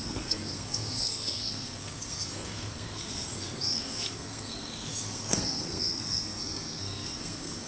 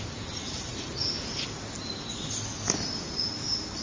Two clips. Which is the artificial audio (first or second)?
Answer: first